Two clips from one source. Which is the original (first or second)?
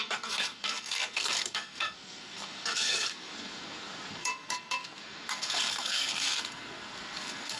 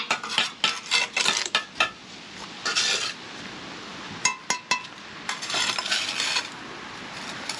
second